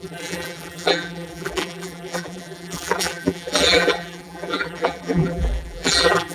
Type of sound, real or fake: fake